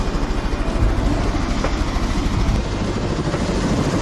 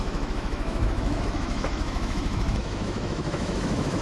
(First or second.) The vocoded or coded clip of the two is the second